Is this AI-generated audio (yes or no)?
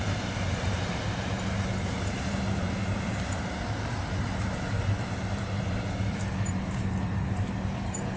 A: yes